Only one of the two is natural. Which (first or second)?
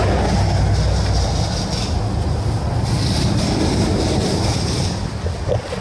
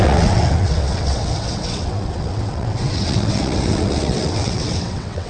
first